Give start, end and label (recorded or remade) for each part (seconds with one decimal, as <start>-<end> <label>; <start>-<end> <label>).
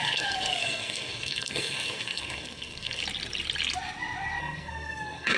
0.0-3.0 remade; 3.0-4.4 recorded; 4.4-5.4 remade